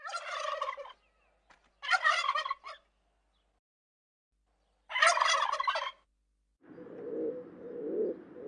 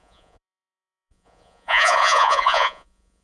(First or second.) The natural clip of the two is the first